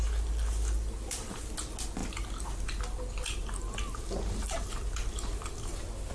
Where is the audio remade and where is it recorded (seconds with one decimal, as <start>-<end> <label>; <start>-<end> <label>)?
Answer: 0.0-6.1 recorded